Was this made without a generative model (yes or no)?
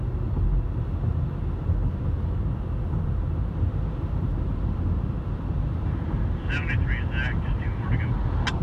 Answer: yes